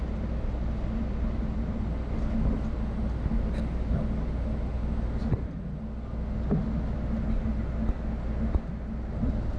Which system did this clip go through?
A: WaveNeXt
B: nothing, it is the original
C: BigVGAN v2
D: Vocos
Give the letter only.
B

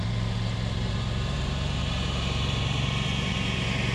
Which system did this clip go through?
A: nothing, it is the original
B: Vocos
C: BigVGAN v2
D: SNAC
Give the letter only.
C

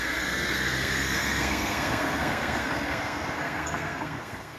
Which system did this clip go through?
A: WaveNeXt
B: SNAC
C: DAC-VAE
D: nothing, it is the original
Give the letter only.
B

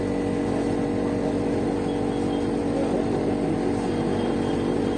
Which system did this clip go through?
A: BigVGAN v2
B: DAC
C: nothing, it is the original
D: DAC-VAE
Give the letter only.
C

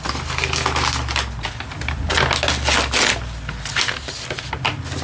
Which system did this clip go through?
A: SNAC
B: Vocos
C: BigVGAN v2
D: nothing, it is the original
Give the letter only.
D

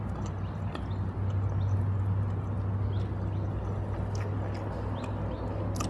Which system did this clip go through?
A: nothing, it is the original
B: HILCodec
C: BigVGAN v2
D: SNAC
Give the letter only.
A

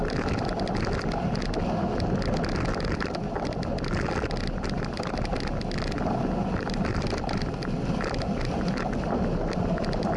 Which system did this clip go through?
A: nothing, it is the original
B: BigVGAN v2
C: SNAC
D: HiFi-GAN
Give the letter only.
A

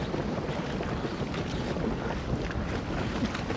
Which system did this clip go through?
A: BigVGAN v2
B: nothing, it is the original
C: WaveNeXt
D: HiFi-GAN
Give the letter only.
B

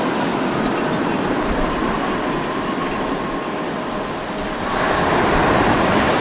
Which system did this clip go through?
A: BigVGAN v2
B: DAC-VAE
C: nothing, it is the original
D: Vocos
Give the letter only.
A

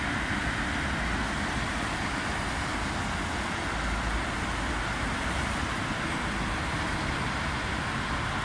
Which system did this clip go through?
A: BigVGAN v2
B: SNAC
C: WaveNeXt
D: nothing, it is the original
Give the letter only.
D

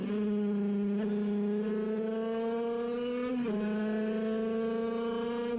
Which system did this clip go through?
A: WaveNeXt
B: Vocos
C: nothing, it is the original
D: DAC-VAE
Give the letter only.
C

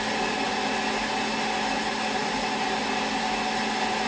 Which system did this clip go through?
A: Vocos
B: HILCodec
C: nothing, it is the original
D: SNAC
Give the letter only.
C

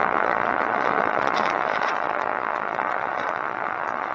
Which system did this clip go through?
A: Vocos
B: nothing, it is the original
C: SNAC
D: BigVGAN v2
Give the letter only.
A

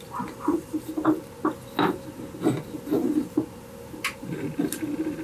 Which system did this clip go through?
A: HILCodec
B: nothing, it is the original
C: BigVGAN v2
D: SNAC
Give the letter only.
B